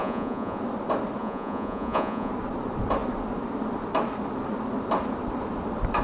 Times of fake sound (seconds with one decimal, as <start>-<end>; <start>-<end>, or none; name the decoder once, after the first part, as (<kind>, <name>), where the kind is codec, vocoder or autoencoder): 0.0-0.6 (vocoder, Vocos); 1.2-2.3